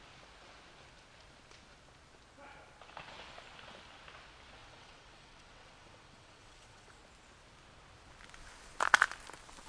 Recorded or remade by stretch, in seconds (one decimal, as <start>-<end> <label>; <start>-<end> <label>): 0.0-4.6 recorded; 4.6-7.0 remade; 7.0-9.7 recorded